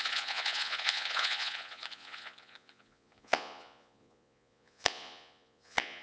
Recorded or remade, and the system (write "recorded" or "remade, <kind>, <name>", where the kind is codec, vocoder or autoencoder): remade, vocoder, Vocos